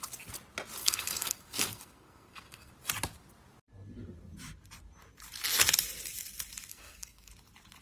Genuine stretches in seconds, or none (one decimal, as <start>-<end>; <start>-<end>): 0.0-0.8; 2.7-6.7; 7.3-7.8